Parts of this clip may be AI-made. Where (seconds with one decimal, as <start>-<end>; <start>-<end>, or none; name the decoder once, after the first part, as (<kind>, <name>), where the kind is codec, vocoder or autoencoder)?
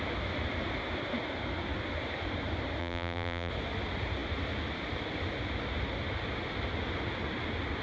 2.8-3.5 (vocoder, BigVGAN v2)